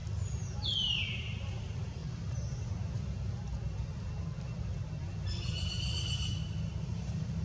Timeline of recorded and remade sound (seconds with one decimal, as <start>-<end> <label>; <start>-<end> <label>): 0.0-0.6 recorded; 0.6-2.0 remade; 2.0-6.4 recorded; 6.4-7.4 remade